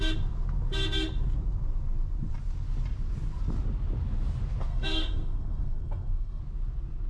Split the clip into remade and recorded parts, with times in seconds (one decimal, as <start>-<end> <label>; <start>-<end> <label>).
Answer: 0.0-4.7 recorded; 4.7-6.4 remade; 6.4-7.1 recorded